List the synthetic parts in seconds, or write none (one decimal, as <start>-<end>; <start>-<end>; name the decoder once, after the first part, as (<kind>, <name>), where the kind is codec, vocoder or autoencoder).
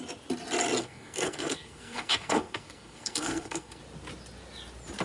0.8-3.8 (codec, SNAC)